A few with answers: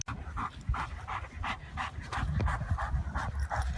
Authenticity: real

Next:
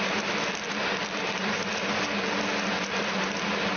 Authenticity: real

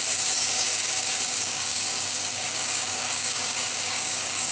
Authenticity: fake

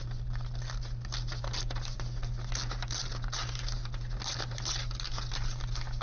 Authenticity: real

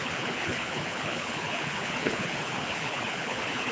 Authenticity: fake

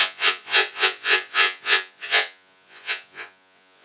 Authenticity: fake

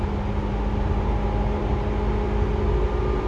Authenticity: real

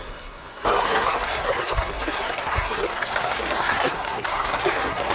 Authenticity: fake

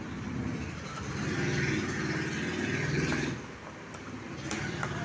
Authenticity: real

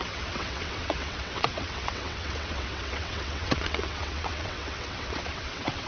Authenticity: fake